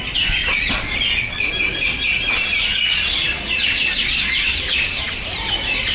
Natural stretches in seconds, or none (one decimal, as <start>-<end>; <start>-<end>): 0.0-0.4; 1.5-2.7; 5.1-5.9